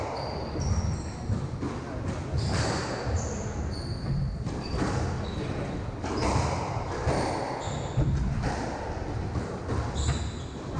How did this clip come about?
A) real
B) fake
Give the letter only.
A